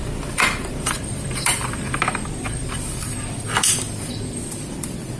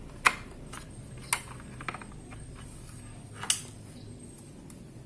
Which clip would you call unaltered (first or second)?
second